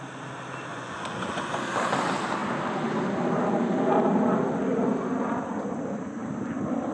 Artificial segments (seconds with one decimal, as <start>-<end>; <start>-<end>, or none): 0.7-1.6